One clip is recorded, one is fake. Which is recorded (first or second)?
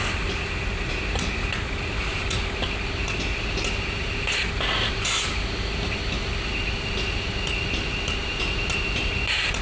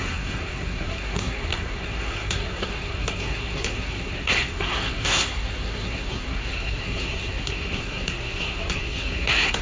first